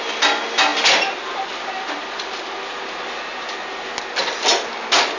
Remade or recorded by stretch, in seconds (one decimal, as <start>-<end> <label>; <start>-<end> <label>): 0.0-5.2 recorded